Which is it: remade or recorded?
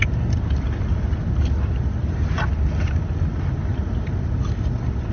remade